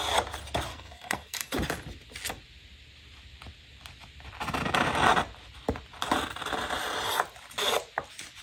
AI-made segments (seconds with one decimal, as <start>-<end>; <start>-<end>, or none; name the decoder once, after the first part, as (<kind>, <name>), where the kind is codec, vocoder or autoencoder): 0.7-1.5 (codec, SNAC)